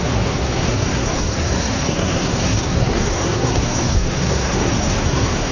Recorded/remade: remade